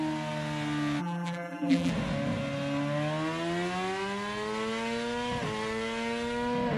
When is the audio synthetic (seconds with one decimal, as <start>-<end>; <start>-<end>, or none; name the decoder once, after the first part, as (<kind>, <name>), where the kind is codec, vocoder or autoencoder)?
1.0-1.9 (vocoder, BigVGAN v2)